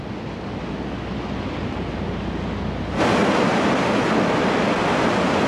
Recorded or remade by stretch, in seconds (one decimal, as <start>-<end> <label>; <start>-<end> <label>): 0.0-5.5 recorded